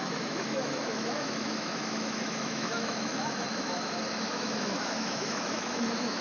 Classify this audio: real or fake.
fake